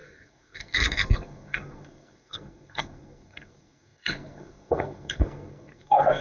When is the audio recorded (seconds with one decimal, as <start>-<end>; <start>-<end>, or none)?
none